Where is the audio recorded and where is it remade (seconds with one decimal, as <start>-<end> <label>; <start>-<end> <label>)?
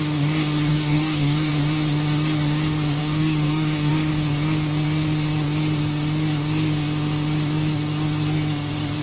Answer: 0.0-0.7 recorded; 0.7-1.5 remade; 1.5-3.0 recorded; 3.0-3.9 remade; 3.9-9.0 recorded